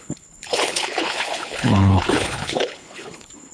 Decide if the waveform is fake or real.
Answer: fake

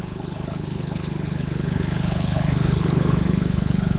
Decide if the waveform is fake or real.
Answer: fake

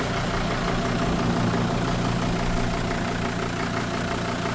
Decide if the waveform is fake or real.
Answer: real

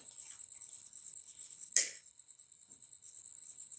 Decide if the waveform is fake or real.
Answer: fake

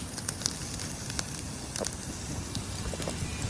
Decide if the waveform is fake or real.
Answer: real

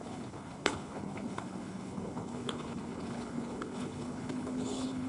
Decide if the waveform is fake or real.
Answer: fake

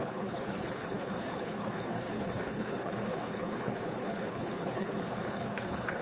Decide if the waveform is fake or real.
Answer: fake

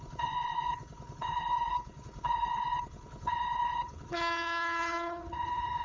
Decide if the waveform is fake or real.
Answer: fake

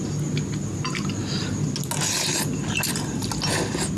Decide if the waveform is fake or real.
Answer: real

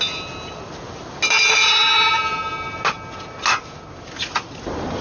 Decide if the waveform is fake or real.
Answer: real